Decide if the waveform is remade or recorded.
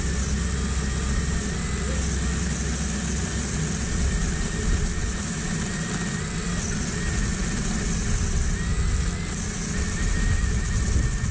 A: recorded